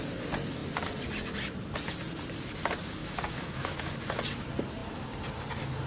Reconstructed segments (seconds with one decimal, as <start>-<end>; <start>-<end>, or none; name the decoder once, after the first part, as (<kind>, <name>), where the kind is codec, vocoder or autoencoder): 3.0-3.9 (autoencoder, DAC-VAE)